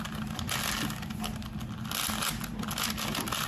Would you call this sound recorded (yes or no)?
yes